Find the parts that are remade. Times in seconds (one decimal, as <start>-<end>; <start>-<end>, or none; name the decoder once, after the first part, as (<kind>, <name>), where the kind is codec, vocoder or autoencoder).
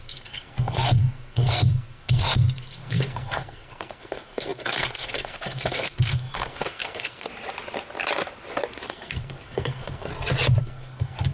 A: 0.0-7.3 (codec, SNAC); 8.9-10.1; 10.6-11.3